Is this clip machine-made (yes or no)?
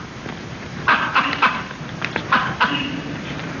yes